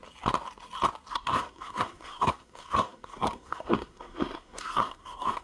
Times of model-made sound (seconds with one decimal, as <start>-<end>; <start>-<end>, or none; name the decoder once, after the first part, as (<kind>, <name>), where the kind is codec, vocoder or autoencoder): 1.1-5.4 (codec, SNAC)

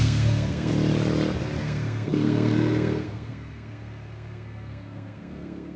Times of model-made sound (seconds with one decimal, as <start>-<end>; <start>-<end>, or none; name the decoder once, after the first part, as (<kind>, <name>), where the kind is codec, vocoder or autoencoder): 0.0-0.7 (codec, SNAC); 1.6-5.8

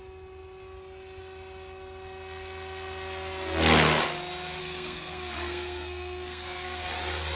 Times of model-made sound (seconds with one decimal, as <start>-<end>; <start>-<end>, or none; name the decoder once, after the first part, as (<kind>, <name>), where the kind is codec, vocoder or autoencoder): 4.6-6.8 (codec, SNAC)